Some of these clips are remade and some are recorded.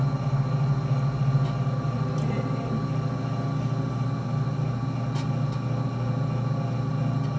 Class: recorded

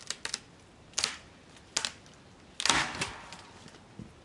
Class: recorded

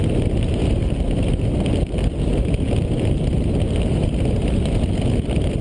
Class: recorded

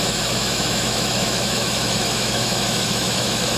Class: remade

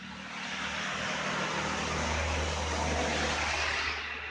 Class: recorded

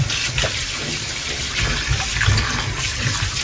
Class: recorded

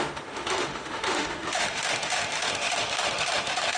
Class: remade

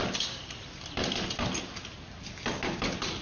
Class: recorded